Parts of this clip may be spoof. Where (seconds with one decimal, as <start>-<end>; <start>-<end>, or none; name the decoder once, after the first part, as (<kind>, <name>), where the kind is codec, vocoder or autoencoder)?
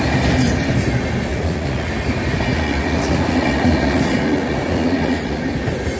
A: 1.3-1.9 (vocoder, Vocos); 2.5-5.4